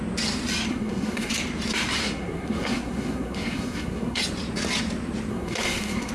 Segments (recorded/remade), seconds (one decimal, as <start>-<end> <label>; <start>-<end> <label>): 0.0-0.7 recorded; 0.7-1.3 remade; 1.3-2.0 recorded; 2.0-4.2 remade; 4.2-5.3 recorded; 5.3-6.1 remade